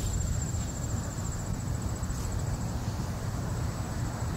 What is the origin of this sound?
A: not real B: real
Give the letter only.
A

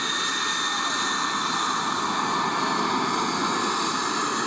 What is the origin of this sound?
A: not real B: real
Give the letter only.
B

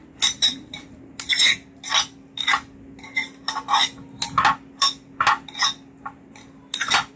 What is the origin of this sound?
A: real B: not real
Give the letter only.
A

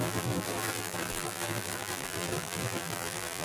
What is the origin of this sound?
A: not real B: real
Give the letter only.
A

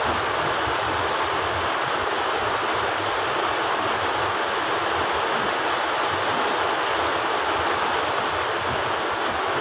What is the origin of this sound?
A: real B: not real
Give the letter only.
A